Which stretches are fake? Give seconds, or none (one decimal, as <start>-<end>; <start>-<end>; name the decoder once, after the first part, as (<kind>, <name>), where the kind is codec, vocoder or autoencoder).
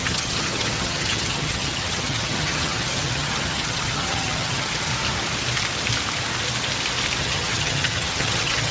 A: 0.0-4.9 (vocoder, HiFi-GAN); 7.2-8.7